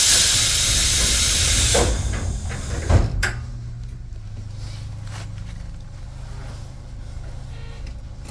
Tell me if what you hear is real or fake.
real